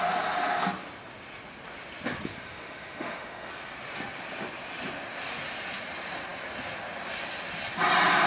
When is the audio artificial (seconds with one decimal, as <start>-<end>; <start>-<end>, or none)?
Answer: 2.3-3.5